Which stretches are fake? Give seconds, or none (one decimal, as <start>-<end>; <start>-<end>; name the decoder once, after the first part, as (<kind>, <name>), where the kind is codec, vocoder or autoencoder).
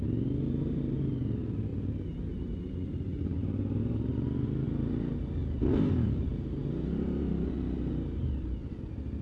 none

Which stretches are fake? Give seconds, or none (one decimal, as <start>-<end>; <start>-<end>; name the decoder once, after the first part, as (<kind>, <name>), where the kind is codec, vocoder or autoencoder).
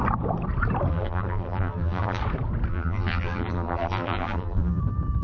0.9-2.2 (vocoder, BigVGAN v2); 2.7-4.8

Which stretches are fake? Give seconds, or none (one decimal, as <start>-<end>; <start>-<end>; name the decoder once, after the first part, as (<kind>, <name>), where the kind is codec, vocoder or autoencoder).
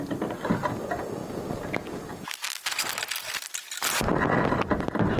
none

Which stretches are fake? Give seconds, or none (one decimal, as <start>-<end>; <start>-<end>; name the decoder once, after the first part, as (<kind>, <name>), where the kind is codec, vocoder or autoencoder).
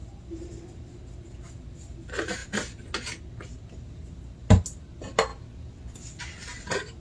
0.0-0.5 (vocoder, BigVGAN v2)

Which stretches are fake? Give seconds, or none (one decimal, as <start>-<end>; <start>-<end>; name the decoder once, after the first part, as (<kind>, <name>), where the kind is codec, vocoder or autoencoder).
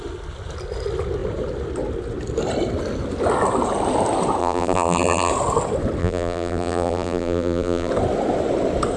4.4-5.3 (vocoder, BigVGAN v2); 6.0-7.9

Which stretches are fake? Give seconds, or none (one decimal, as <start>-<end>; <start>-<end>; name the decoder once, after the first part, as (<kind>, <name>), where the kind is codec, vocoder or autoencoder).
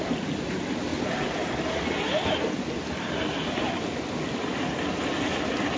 none